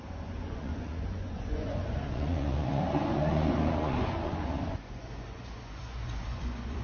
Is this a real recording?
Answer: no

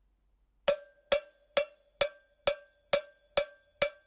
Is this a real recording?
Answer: yes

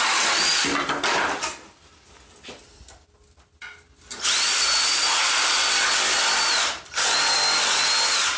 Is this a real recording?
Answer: yes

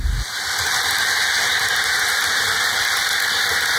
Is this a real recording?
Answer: yes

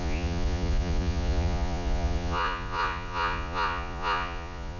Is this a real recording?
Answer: no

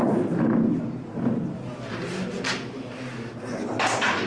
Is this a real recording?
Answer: yes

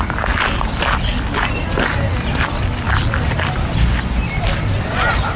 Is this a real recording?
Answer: yes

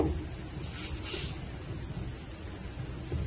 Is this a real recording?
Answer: yes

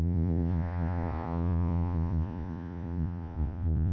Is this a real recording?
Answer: no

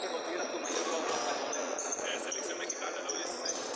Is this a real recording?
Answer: no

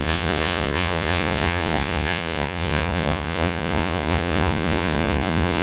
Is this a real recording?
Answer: no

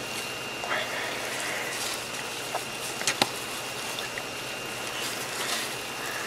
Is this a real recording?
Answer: yes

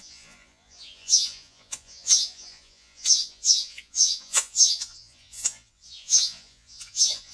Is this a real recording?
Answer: no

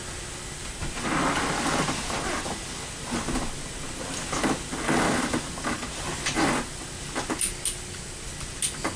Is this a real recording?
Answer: yes